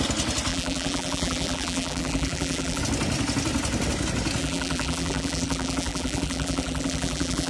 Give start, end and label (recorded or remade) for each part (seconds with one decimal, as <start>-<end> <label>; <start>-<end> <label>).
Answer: 0.0-0.5 recorded; 0.5-2.8 remade; 2.8-4.4 recorded; 4.4-7.5 remade